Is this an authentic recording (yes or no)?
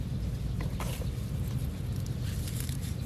yes